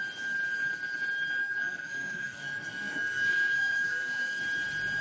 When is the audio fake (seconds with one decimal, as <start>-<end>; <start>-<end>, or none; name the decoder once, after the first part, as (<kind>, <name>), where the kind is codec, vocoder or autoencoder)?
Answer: 1.4-4.4 (codec, SNAC)

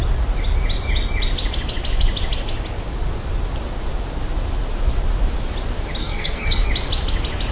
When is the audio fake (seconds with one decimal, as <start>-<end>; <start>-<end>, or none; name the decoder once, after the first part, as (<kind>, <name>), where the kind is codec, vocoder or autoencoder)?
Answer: 6.0-6.7 (codec, SNAC)

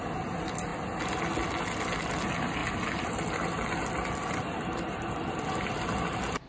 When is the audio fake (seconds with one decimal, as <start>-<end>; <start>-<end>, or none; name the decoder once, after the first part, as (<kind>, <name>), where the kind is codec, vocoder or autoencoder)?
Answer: none